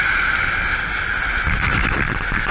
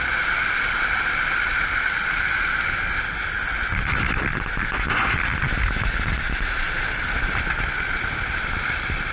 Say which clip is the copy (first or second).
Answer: second